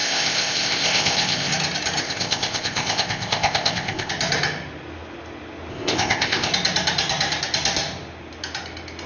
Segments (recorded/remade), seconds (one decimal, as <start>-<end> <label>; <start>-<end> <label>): 0.0-1.5 remade; 1.5-2.0 recorded; 2.0-4.1 remade; 4.1-5.7 recorded; 5.7-6.5 remade; 6.5-9.1 recorded